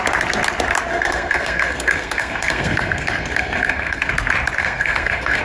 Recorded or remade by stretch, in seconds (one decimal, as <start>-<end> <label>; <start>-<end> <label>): 0.0-0.9 recorded; 0.9-4.1 remade; 4.1-4.6 recorded; 4.6-5.4 remade